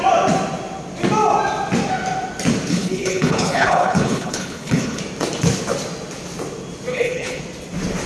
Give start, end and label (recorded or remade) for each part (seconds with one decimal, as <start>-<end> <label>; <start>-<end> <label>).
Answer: 0.0-2.7 recorded; 2.7-5.0 remade; 5.0-6.9 recorded; 6.9-7.4 remade; 7.4-8.1 recorded